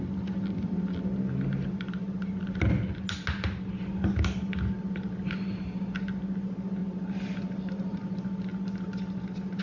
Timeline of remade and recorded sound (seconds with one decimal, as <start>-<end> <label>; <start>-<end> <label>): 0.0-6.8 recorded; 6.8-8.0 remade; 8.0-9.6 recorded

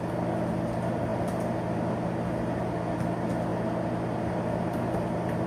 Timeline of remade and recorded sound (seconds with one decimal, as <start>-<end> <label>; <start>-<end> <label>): 0.0-5.5 recorded

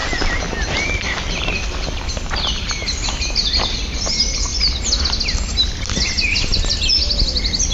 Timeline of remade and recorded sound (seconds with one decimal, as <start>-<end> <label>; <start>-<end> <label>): 0.0-7.7 recorded

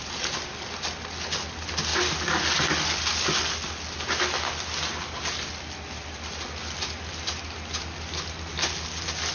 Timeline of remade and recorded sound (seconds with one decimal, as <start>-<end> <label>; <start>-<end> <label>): 0.0-9.3 recorded